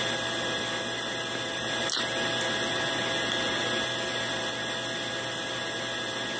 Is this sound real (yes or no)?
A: yes